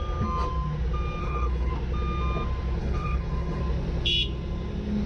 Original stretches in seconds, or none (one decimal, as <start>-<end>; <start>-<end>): 0.0-1.2; 1.7-2.8; 3.6-5.1